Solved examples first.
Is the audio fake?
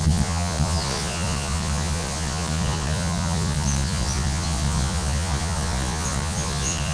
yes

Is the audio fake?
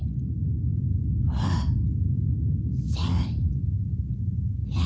no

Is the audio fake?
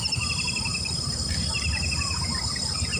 no